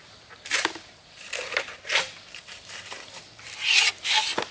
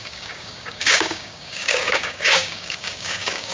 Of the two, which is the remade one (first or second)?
second